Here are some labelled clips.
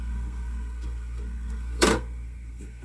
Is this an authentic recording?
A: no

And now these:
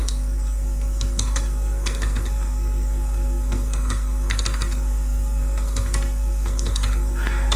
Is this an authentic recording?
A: no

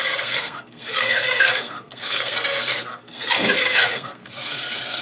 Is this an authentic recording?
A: no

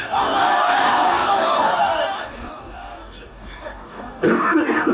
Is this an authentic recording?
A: no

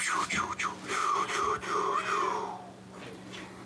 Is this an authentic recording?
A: yes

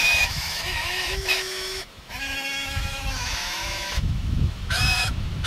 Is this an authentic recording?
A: no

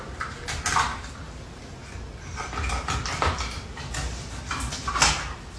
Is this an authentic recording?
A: yes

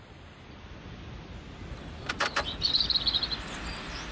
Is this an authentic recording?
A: yes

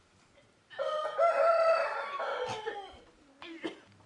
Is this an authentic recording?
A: yes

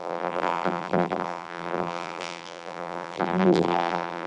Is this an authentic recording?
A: no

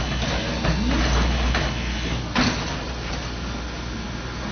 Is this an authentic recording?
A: yes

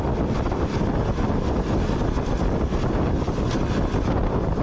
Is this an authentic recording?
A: yes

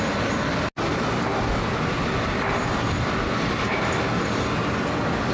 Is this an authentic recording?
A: yes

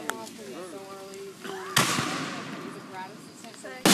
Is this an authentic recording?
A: yes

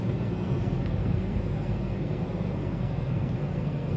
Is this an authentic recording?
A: no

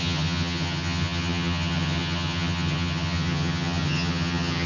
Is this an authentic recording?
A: no